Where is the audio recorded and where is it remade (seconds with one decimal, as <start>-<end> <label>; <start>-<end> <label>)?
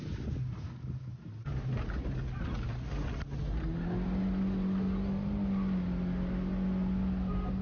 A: 0.0-7.6 recorded